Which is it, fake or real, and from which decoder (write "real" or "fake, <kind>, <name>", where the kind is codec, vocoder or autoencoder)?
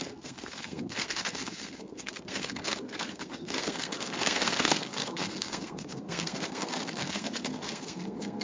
fake, codec, SNAC